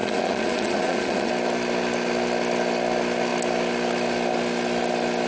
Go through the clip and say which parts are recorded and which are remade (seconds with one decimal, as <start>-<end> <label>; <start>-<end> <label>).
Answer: 0.0-1.3 remade; 1.3-5.3 recorded